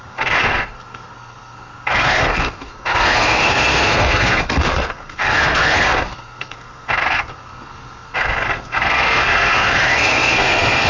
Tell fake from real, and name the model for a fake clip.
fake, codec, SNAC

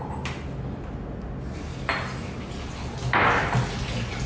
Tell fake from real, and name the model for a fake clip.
real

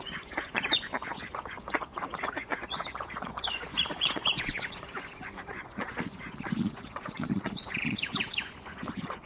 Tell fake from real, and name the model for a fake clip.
fake, vocoder, Vocos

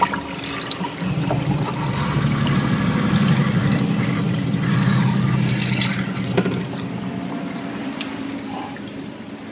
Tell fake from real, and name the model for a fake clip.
real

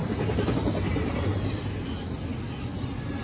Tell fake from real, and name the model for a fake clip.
real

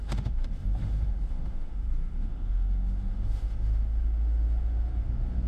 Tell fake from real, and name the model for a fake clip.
fake, autoencoder, DAC-VAE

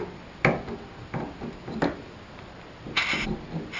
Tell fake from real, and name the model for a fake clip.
real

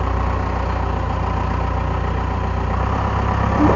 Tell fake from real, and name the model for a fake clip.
real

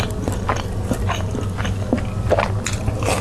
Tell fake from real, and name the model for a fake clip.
real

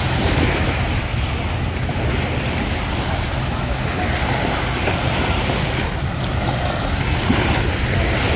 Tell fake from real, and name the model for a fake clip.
real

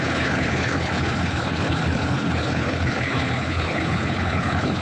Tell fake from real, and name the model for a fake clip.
fake, codec, HILCodec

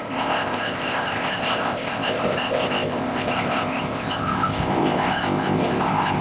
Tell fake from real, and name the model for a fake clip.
fake, codec, ZipCodec